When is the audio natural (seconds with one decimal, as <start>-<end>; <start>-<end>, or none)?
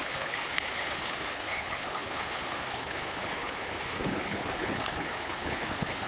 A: none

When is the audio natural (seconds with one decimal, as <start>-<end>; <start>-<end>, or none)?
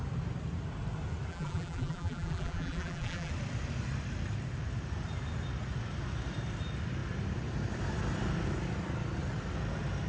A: 0.0-1.3; 3.3-10.1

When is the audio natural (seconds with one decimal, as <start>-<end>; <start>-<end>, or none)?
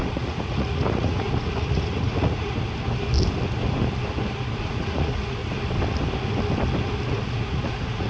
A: 2.4-4.6; 5.4-7.1